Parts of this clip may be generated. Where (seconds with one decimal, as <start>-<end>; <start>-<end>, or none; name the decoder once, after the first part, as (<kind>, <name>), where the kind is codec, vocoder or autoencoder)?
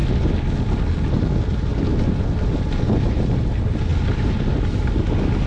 none